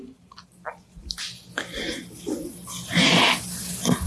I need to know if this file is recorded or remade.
recorded